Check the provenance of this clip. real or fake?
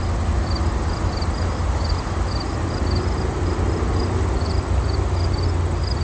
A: real